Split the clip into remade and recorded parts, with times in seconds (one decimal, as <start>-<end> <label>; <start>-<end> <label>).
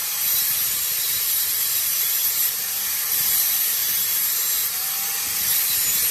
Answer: 0.0-3.8 remade; 3.8-6.1 recorded